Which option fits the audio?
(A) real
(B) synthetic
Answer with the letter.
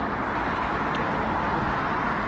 A